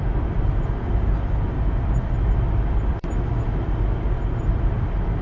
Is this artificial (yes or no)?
no